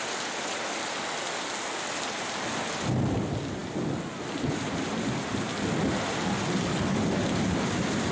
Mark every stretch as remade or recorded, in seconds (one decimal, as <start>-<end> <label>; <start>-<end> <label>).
0.0-8.1 recorded